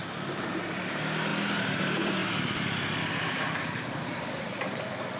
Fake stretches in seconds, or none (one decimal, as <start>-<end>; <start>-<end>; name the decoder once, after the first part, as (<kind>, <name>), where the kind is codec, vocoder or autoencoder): 0.8-5.2 (vocoder, BigVGAN v2)